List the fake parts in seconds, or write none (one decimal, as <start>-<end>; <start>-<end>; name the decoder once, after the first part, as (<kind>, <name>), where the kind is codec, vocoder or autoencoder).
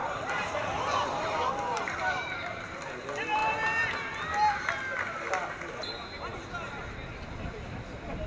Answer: 0.0-0.5 (vocoder, BigVGAN v2)